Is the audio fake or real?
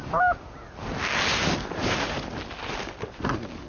real